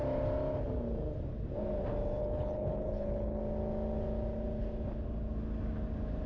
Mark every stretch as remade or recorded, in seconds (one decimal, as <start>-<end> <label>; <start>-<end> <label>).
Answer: 0.0-2.2 recorded; 2.2-3.4 remade; 3.4-6.3 recorded